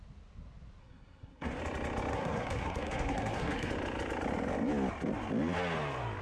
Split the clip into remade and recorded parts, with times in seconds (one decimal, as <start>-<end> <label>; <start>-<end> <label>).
0.0-0.8 recorded; 0.8-1.6 remade; 1.6-2.1 recorded; 2.1-3.7 remade; 3.7-6.2 recorded